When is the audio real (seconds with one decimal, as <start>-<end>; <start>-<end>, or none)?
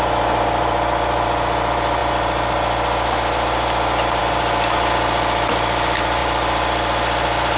0.0-7.6